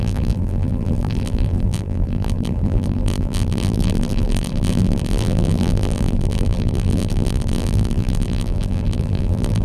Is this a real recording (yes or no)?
no